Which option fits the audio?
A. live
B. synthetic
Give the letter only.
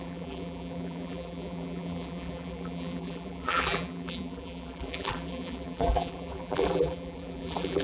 B